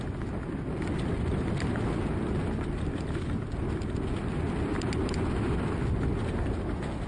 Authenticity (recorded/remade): recorded